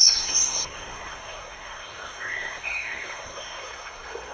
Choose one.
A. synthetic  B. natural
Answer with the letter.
A